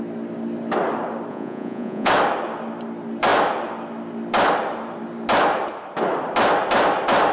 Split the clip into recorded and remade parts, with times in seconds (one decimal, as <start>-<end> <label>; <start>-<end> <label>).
0.0-1.3 recorded; 1.3-2.1 remade; 2.1-7.3 recorded